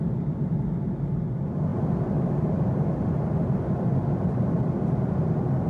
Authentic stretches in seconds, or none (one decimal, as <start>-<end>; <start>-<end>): 0.0-5.7